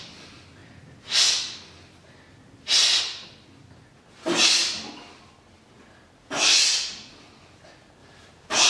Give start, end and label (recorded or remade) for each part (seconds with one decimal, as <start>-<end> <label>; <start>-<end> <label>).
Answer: 0.0-8.0 recorded; 8.0-8.7 remade